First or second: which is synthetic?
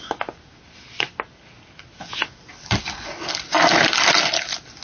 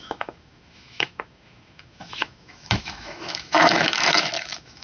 second